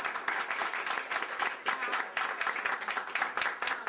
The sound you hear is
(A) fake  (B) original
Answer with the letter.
B